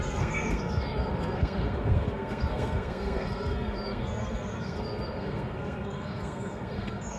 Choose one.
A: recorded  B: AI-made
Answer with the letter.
B